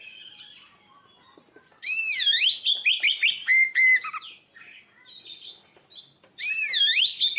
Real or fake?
real